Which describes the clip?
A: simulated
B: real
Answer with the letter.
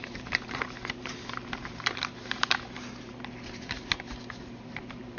A